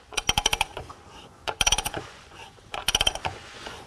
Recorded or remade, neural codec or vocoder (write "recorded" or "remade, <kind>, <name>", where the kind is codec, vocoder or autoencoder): remade, vocoder, Vocos